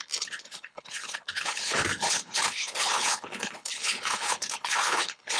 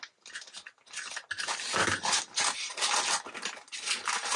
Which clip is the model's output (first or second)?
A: first